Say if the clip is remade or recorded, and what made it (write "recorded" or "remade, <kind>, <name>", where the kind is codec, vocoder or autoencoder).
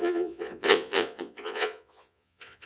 remade, vocoder, Vocos